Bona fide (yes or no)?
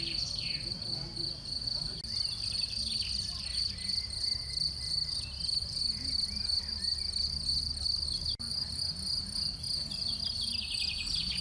yes